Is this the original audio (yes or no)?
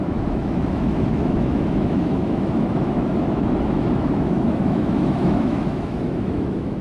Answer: no